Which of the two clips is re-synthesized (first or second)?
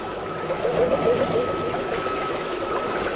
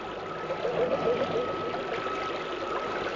first